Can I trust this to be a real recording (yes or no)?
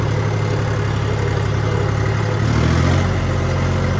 yes